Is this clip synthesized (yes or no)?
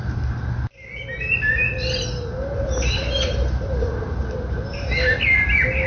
no